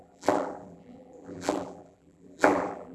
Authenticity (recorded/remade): remade